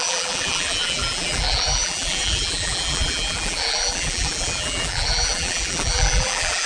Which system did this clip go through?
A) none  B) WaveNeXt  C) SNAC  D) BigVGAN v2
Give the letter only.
D